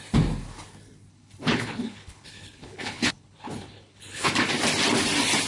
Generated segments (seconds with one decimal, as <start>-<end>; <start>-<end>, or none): 1.1-4.3